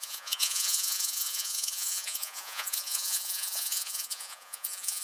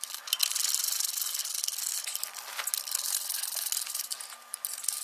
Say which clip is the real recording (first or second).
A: second